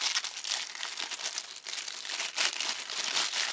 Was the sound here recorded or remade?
recorded